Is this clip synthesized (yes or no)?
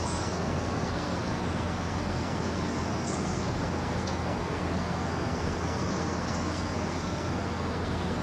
yes